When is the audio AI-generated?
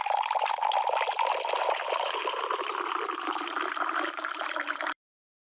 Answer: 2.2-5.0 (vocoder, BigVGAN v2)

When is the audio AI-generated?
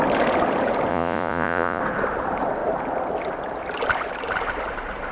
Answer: 0.9-1.8 (vocoder, Vocos)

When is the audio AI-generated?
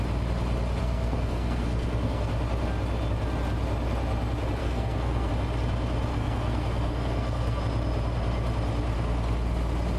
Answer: 0.8-2.3 (codec, SNAC); 4.6-5.3; 6.1-7.6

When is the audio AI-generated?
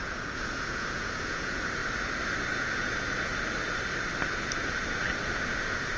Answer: 0.0-1.8 (vocoder, Vocos); 2.5-3.3; 5.6-6.0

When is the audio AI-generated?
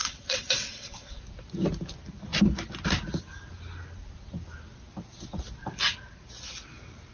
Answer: 0.0-1.2 (vocoder, WaveNeXt)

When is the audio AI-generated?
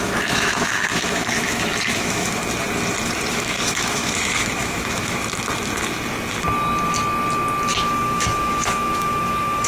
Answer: 0.0-2.4 (autoencoder, DAC-VAE); 3.3-5.2; 7.7-9.7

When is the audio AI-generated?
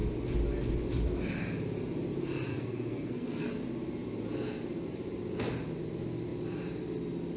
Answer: 2.5-3.5 (codec, SNAC)